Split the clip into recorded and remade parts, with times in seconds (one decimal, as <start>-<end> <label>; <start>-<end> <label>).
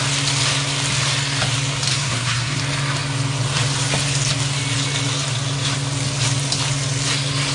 0.0-1.9 recorded; 1.9-2.6 remade; 2.6-7.5 recorded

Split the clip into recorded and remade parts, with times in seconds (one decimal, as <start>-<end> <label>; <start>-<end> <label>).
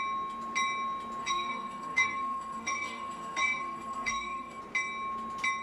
0.0-1.2 recorded; 1.2-4.6 remade; 4.6-5.6 recorded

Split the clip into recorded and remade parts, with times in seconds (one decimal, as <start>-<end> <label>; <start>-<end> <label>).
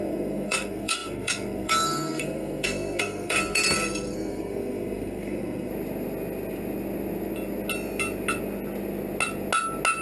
0.0-5.7 remade; 5.7-10.0 recorded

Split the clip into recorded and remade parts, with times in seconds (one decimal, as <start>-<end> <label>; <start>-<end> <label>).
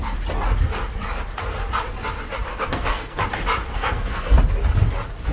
0.0-2.5 recorded; 2.5-3.2 remade; 3.2-3.7 recorded; 3.7-4.4 remade; 4.4-5.3 recorded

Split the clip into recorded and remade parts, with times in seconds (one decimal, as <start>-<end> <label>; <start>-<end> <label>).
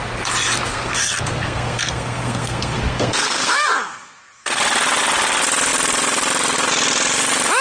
0.0-0.7 recorded; 0.7-4.6 remade; 4.6-7.6 recorded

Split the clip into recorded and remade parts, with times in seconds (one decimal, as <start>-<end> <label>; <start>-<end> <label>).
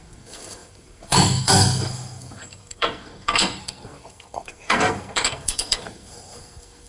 0.0-6.9 remade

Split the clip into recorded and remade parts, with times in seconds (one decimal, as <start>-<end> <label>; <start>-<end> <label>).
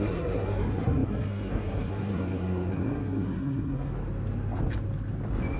0.0-3.9 remade; 3.9-5.6 recorded